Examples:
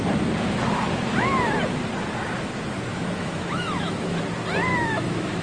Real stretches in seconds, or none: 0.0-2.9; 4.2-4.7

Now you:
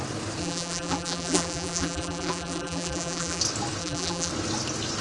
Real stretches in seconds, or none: 0.0-0.4; 3.4-3.8; 4.3-5.0

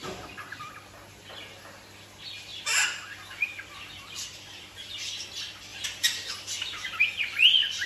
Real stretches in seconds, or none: 0.0-7.9

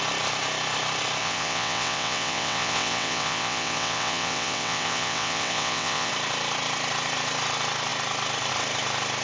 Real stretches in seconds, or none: 0.0-1.2; 6.1-9.2

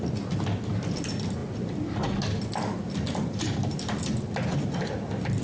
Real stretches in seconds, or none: 0.0-5.4